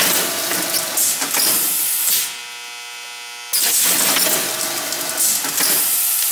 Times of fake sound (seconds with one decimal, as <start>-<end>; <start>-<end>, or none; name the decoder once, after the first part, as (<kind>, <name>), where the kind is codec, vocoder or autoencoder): none